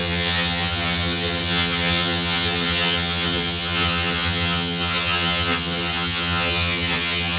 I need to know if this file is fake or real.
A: fake